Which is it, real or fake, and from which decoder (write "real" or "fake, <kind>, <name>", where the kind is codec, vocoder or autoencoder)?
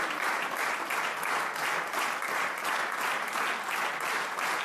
real